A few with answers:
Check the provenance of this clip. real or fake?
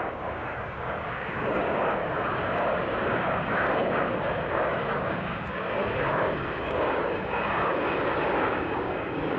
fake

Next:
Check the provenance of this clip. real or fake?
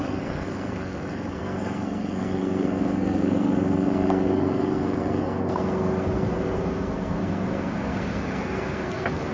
fake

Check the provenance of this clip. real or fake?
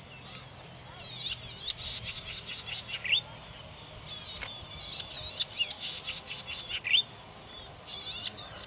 real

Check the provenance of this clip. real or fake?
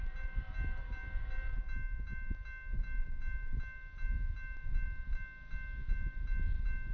real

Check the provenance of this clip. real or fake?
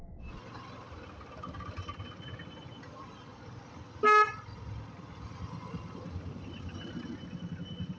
real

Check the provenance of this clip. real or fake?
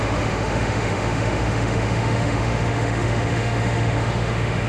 fake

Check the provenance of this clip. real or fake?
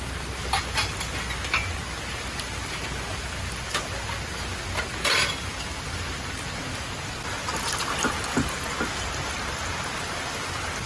real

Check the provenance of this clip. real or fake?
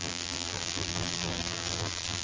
fake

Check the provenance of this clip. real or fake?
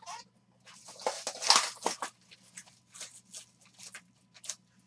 real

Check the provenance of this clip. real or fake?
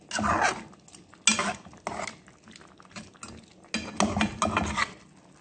real